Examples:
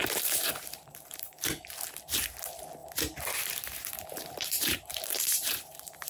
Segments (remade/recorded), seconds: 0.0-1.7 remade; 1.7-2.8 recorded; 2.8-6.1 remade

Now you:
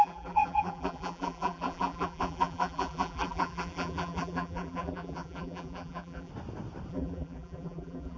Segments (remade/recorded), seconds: 0.0-6.3 remade; 6.3-6.9 recorded; 6.9-8.2 remade

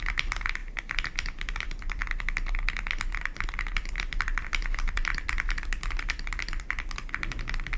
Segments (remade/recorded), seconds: 0.0-2.0 remade; 2.0-3.5 recorded; 3.5-7.8 remade

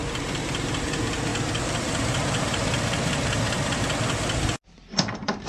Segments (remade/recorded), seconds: 0.0-0.9 remade; 0.9-1.3 recorded; 1.3-3.8 remade; 3.8-5.5 recorded

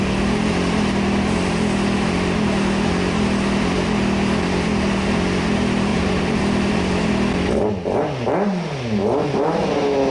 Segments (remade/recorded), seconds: 0.0-5.9 recorded; 5.9-6.4 remade; 6.4-9.0 recorded; 9.0-9.7 remade; 9.7-10.1 recorded

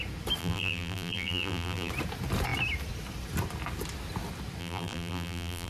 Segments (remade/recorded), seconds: 0.0-0.4 recorded; 0.4-1.9 remade; 1.9-4.6 recorded; 4.6-5.7 remade